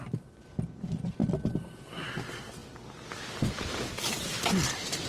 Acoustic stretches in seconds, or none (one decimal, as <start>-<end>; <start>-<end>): 0.0-5.1